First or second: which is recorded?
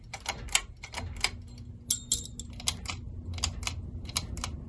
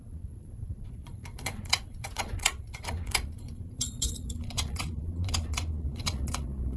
first